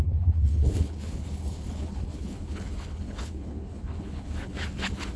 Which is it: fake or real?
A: fake